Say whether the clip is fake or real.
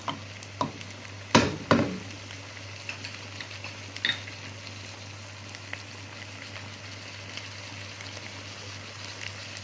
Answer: real